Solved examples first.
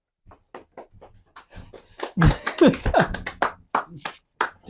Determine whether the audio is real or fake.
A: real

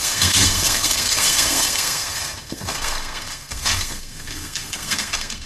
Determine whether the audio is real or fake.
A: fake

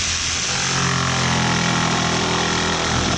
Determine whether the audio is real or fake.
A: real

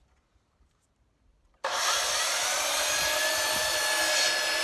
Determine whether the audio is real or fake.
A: fake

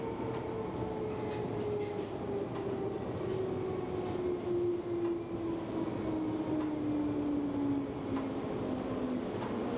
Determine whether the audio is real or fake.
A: real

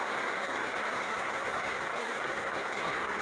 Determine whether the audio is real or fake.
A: fake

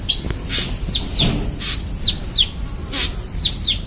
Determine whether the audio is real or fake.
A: real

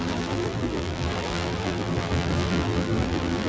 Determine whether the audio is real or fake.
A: fake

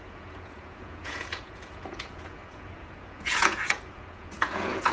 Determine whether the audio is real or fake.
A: fake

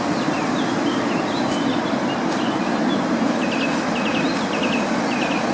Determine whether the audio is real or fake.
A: real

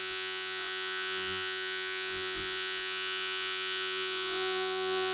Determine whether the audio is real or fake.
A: fake